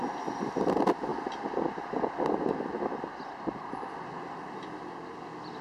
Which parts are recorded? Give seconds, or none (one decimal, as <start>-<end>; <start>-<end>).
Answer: 0.0-1.1; 4.3-5.6